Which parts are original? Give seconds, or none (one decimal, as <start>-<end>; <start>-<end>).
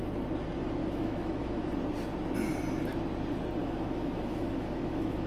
0.0-0.8; 1.7-3.6